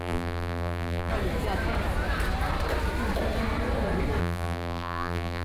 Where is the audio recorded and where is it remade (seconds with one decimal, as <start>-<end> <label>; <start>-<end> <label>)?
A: 0.0-1.1 remade; 1.1-4.2 recorded; 4.2-5.4 remade